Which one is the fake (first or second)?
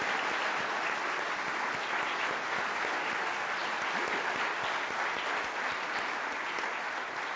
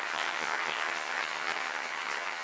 second